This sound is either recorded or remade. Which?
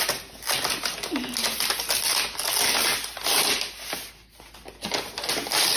recorded